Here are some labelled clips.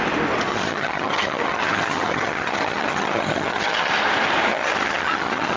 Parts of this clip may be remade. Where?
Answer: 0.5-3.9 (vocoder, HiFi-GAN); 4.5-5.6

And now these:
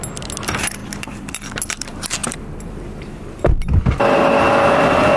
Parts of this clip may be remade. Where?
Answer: 0.8-1.6 (vocoder, BigVGAN v2); 2.2-3.8

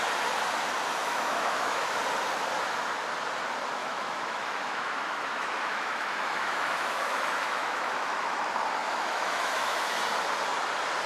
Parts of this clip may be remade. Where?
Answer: 1.0-2.0 (autoencoder, DAC-VAE); 3.8-8.4; 8.8-10.0

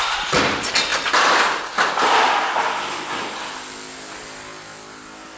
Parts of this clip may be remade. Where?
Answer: none

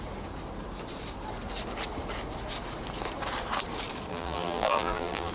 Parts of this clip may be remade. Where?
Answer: 4.1-5.3 (vocoder, BigVGAN v2)

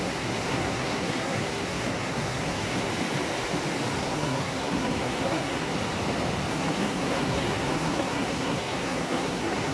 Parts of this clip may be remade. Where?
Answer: 0.0-2.9 (codec, SNAC); 4.0-5.7; 6.5-9.7

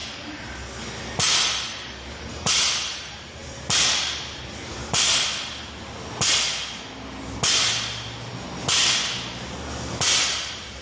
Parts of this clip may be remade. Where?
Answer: 2.3-4.8 (vocoder, BigVGAN v2); 9.9-10.8

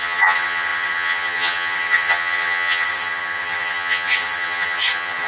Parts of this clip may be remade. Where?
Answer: 0.0-5.3 (vocoder, HiFi-GAN)